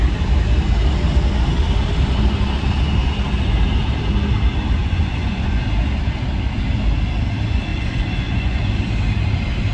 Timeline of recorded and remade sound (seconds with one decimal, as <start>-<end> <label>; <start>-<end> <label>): 0.0-4.8 recorded; 4.8-5.6 remade; 5.6-7.7 recorded; 7.7-8.8 remade; 8.8-9.7 recorded